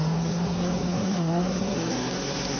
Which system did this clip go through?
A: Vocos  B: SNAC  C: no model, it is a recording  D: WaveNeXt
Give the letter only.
B